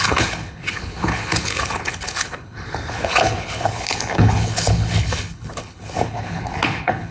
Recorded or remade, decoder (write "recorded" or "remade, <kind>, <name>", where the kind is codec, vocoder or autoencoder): remade, codec, HILCodec